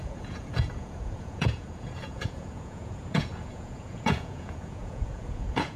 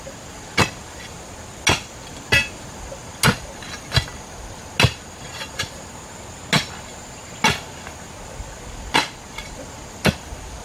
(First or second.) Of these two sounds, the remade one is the first